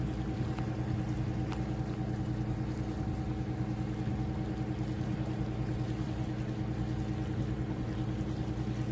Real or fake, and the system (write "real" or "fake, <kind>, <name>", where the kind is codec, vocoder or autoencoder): real